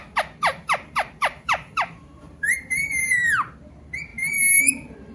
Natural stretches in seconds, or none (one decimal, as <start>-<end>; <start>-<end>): 0.0-0.5; 2.8-5.1